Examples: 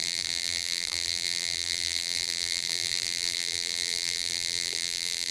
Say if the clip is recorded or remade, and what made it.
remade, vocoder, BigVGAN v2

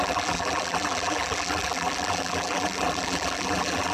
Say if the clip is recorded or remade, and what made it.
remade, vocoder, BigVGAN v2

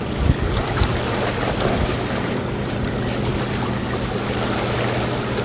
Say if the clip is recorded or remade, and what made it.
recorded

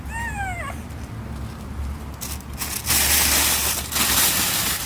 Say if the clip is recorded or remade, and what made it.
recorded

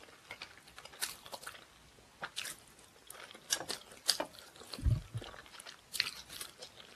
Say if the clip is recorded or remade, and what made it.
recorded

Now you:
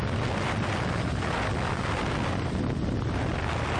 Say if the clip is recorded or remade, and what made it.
recorded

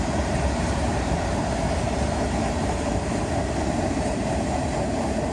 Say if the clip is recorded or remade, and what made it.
remade, vocoder, BigVGAN v2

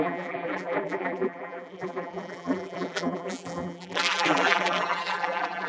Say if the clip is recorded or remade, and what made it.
remade, vocoder, BigVGAN v2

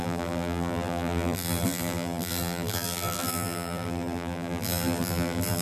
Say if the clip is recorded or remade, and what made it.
remade, vocoder, BigVGAN v2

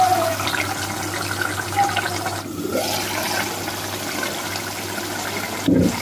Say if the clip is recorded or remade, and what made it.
recorded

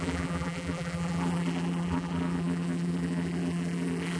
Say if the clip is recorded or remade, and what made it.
remade, vocoder, BigVGAN v2